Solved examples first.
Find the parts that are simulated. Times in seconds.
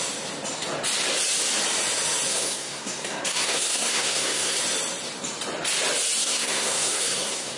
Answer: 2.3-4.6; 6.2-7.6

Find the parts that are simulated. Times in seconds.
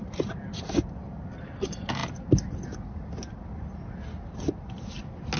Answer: none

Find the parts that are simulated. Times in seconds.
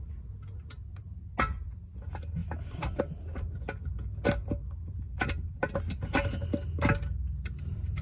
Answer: none